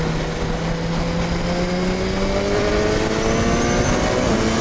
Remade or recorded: recorded